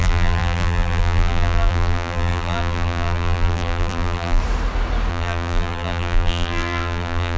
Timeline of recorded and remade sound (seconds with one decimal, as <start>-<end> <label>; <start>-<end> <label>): 0.0-4.4 remade; 4.4-5.1 recorded; 5.1-7.4 remade